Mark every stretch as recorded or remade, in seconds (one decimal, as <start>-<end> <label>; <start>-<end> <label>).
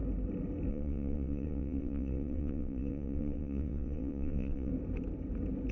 0.0-0.7 recorded; 0.7-4.7 remade; 4.7-5.7 recorded